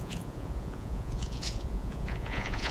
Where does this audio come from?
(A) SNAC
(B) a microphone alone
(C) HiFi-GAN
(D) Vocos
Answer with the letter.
D